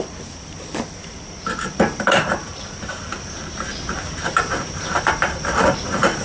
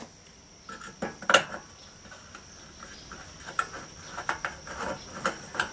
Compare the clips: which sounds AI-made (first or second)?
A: first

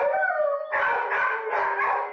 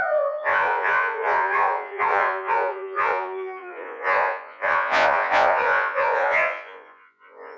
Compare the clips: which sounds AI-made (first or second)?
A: second